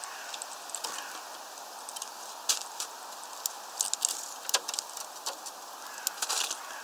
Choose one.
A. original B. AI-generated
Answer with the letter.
A